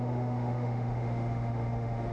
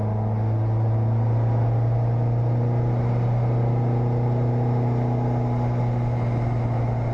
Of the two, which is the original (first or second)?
second